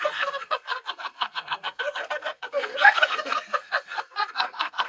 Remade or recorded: remade